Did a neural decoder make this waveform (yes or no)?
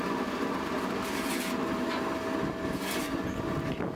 no